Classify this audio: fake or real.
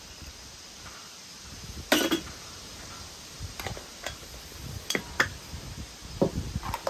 real